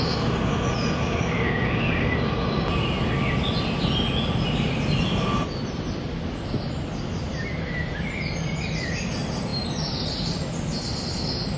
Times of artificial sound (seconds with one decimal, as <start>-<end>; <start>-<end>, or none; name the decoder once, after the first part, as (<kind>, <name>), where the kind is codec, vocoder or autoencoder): none